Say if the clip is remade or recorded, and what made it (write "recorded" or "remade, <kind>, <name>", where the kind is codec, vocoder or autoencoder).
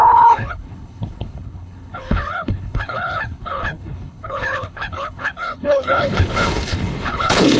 remade, codec, HILCodec